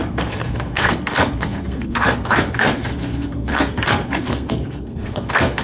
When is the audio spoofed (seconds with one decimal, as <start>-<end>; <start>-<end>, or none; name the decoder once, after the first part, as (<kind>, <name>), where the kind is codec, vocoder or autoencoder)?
0.0-5.6 (codec, SNAC)